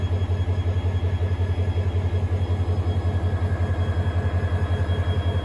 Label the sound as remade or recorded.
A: recorded